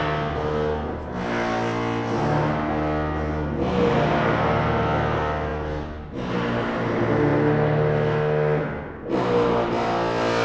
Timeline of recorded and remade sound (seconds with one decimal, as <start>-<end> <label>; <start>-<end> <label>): 0.0-10.4 recorded